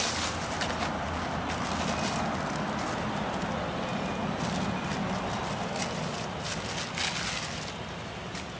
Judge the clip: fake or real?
real